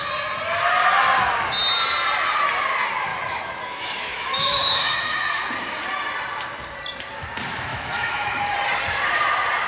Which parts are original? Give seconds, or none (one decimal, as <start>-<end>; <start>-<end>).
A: 0.0-3.1; 5.5-7.7; 8.4-9.7